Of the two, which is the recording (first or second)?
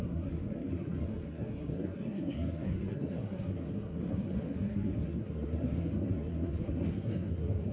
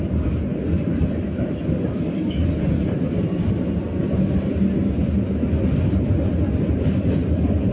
second